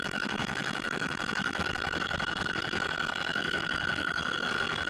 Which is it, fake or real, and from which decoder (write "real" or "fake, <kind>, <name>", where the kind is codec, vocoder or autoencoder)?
fake, codec, SNAC